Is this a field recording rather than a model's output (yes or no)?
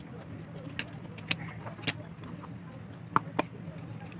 yes